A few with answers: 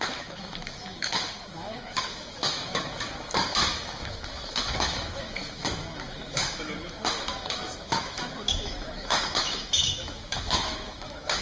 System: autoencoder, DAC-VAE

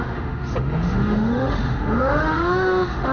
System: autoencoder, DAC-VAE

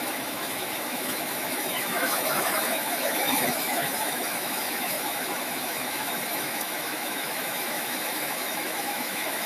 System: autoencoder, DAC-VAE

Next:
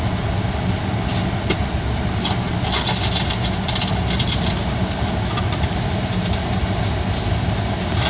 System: none